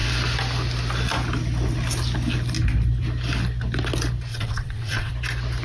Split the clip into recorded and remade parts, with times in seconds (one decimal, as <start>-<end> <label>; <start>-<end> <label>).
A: 0.0-4.3 recorded; 4.3-5.1 remade; 5.1-5.6 recorded